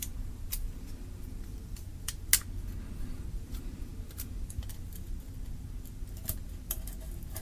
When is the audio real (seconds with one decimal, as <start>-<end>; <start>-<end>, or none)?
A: 2.3-3.0